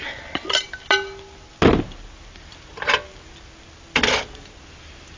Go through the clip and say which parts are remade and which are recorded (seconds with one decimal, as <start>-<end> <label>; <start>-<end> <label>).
0.0-5.2 recorded